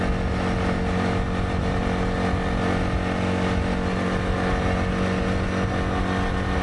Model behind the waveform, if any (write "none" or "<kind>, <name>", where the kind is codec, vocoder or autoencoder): none